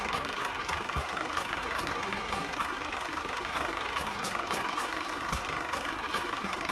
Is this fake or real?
fake